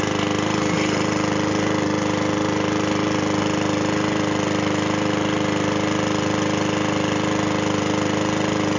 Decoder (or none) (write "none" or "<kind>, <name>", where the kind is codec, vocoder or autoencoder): none